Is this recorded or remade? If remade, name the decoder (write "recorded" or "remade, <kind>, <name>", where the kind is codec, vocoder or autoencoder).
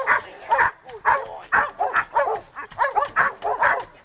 recorded